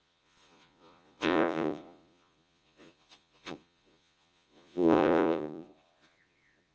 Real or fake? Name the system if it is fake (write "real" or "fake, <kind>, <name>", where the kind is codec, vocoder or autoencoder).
fake, vocoder, Vocos